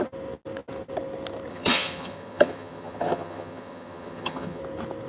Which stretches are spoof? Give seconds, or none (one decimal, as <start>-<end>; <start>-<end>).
1.5-4.6